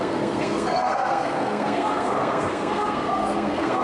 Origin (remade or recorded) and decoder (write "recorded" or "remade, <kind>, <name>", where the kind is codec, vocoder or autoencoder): remade, codec, SNAC